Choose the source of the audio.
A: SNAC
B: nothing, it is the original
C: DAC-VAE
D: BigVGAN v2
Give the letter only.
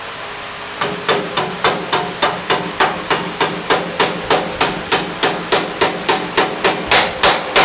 B